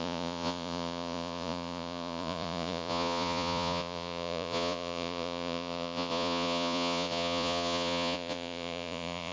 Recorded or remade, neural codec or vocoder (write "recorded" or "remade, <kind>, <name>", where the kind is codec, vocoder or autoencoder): remade, vocoder, Vocos